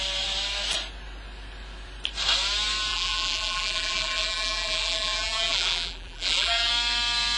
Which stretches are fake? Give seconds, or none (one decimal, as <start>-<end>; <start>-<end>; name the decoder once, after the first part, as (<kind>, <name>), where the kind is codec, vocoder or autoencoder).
2.9-6.7 (vocoder, BigVGAN v2)

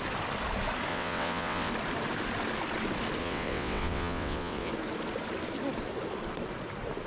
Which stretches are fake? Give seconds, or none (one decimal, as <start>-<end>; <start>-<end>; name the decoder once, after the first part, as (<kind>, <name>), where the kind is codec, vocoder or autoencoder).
0.9-1.7 (vocoder, WaveNeXt); 3.2-4.7

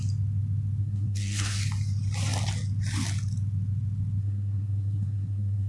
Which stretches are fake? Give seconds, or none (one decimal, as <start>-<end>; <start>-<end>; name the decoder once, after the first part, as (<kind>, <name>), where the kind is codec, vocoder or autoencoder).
0.8-1.6 (codec, SNAC); 4.2-5.7